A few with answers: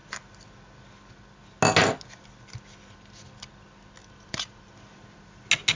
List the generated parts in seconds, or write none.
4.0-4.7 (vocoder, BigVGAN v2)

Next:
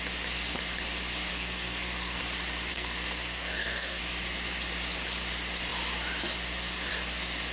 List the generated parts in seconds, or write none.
1.3-2.2 (codec, SNAC); 2.7-4.0